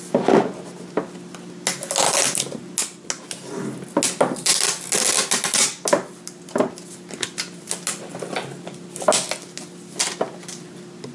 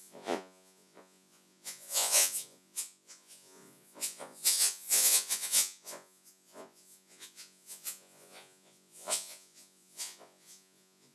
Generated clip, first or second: second